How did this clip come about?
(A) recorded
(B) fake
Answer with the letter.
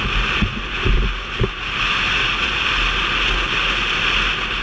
A